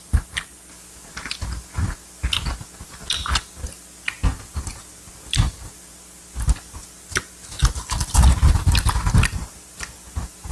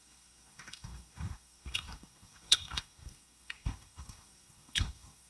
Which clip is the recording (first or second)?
first